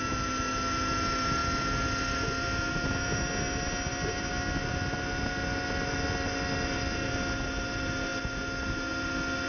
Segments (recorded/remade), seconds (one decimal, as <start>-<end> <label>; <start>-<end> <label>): 0.0-9.5 recorded